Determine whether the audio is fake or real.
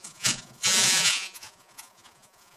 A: fake